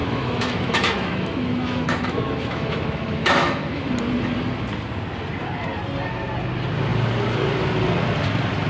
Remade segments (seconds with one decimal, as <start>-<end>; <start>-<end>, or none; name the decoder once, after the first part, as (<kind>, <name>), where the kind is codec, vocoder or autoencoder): 0.0-3.9 (autoencoder, DAC-VAE)